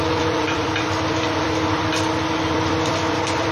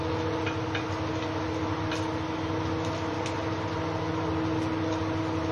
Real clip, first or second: second